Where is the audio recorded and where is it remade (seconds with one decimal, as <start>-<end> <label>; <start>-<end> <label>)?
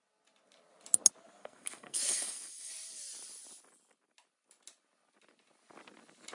0.0-1.4 recorded; 1.4-2.7 remade; 2.7-6.3 recorded